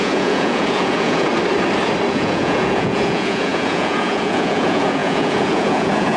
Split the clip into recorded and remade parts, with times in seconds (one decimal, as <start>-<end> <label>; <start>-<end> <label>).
0.0-1.3 remade; 1.3-2.1 recorded; 2.1-6.2 remade